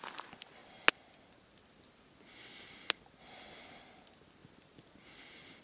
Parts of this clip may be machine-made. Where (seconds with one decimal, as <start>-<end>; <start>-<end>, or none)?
none